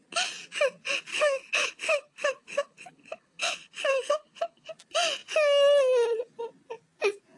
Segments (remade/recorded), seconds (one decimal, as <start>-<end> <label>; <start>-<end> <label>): 0.0-1.1 recorded; 1.1-4.7 remade; 4.7-7.4 recorded